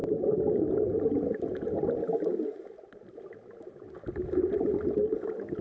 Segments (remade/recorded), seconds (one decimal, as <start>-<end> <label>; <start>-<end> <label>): 0.0-5.6 recorded